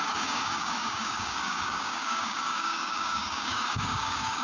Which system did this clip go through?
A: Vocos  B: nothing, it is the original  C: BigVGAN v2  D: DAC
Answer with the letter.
D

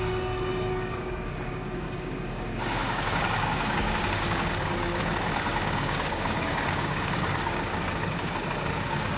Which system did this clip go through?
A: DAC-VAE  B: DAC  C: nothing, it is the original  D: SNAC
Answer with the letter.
B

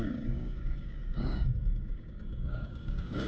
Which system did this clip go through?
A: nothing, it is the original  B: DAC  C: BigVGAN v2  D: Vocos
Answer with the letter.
B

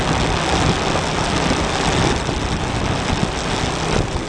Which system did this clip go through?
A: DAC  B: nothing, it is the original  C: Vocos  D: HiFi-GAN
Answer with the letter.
B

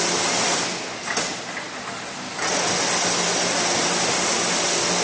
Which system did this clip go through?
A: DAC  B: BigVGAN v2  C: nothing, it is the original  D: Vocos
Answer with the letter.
C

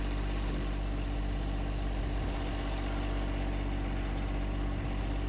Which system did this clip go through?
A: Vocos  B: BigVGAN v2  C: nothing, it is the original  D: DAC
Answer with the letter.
C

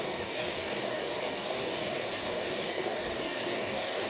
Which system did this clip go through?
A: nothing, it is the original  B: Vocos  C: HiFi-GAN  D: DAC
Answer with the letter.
D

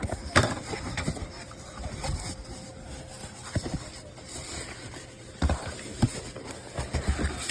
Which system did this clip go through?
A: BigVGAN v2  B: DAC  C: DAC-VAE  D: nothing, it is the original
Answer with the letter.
D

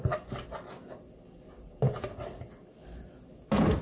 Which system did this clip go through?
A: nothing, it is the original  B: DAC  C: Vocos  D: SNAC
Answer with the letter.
A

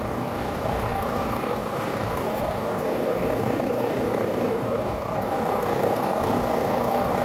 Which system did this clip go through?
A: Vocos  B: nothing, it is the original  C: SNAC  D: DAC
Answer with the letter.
D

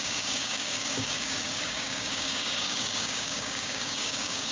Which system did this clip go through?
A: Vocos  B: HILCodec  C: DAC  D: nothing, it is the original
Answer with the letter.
C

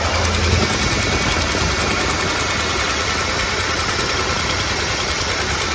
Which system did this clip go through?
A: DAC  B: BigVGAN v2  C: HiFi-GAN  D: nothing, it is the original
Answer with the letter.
D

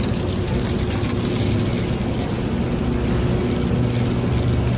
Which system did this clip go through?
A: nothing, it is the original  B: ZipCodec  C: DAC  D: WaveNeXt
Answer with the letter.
A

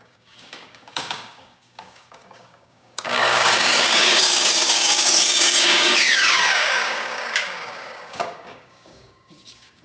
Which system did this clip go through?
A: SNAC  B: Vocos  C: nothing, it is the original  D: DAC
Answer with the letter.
D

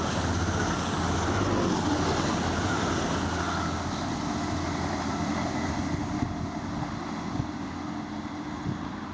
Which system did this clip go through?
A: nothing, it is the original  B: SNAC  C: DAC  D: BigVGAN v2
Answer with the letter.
A